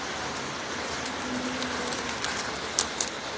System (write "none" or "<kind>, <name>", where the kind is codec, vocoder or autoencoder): none